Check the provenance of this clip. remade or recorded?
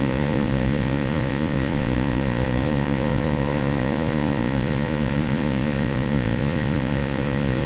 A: remade